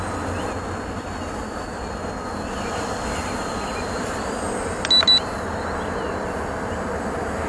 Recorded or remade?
recorded